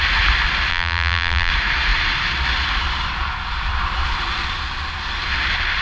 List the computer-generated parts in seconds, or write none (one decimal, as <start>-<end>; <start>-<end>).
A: 0.7-1.5